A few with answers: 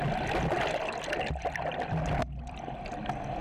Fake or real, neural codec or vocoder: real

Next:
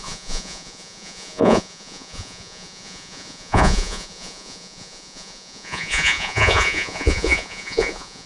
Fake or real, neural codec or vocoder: fake, vocoder, Vocos